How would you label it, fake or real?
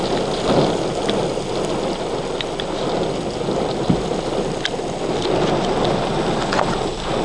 real